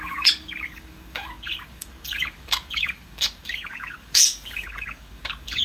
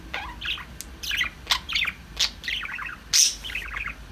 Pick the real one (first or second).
second